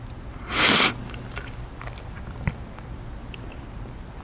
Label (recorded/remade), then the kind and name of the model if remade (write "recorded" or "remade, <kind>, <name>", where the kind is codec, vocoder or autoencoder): recorded